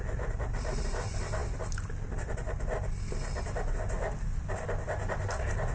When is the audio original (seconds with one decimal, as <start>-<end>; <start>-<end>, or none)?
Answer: 0.0-5.7